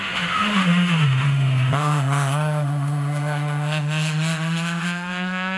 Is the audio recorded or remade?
remade